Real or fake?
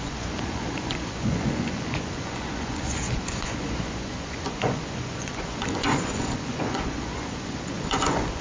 fake